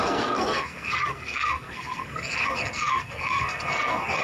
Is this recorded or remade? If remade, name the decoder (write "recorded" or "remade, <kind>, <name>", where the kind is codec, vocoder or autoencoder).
remade, codec, SNAC